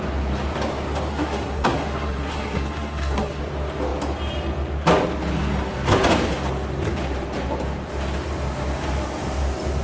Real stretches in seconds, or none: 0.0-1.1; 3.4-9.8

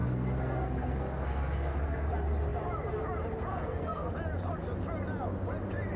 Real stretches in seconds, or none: 2.1-3.5; 4.1-6.0

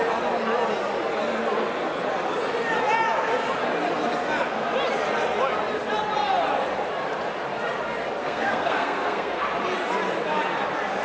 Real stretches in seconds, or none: 0.0-8.2; 9.4-11.0

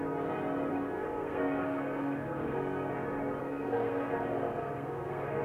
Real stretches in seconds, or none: 0.0-0.7; 2.9-3.4

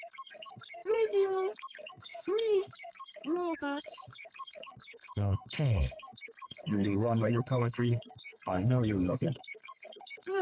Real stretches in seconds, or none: none

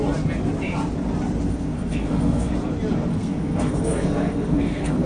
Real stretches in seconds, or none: 0.0-1.5; 2.5-3.1

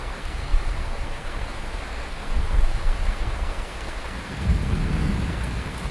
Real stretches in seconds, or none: none

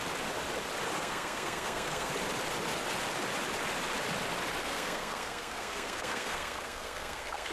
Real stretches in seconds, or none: 0.0-1.0; 2.1-4.6